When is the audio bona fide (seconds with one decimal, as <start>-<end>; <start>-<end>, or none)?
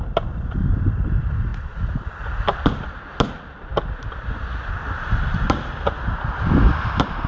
0.0-7.3